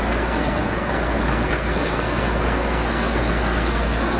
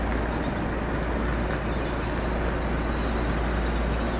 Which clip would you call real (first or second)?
second